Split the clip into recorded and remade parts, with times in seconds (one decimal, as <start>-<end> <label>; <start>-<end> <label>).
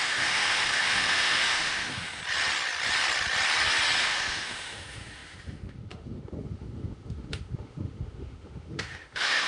0.0-2.2 remade; 2.2-4.0 recorded; 4.0-9.5 remade